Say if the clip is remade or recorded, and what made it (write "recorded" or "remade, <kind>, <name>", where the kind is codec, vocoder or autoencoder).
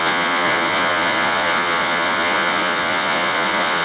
remade, vocoder, Vocos